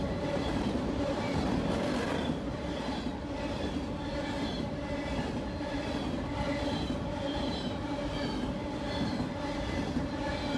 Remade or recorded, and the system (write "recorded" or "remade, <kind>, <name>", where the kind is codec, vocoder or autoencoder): recorded